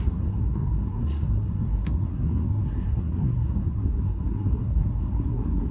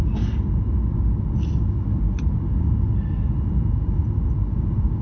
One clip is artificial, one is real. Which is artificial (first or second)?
first